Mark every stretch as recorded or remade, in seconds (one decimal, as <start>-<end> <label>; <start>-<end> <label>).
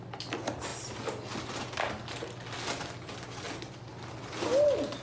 0.0-5.0 recorded